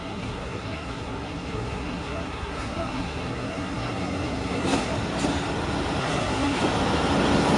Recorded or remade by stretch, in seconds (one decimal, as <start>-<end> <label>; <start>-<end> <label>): 0.0-4.9 remade; 4.9-6.0 recorded; 6.0-6.6 remade; 6.6-7.6 recorded